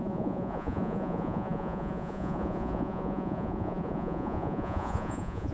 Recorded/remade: remade